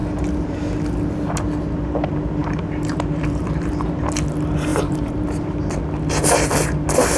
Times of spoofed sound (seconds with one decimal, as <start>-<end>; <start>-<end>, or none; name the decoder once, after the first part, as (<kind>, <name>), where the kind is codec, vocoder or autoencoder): 2.4-3.7 (vocoder, BigVGAN v2); 4.7-5.6